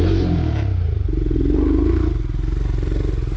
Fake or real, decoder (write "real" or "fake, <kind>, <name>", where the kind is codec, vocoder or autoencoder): real